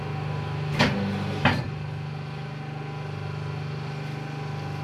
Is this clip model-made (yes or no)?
no